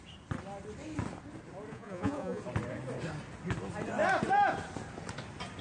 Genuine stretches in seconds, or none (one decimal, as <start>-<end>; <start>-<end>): 0.0-1.7; 2.4-5.6